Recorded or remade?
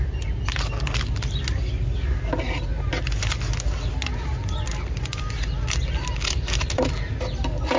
recorded